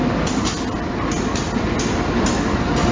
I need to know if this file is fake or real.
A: real